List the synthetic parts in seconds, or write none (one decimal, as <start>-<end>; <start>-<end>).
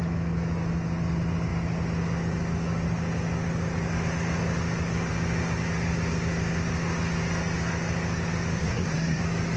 8.6-9.2